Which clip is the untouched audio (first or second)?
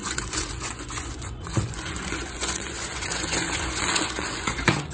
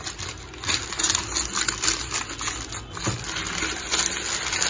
second